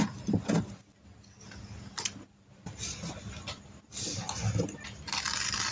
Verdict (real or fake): real